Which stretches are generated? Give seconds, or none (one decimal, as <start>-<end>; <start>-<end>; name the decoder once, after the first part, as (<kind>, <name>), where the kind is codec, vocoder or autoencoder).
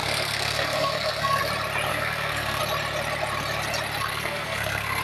0.0-1.4 (codec, SNAC); 1.9-2.6; 4.1-5.0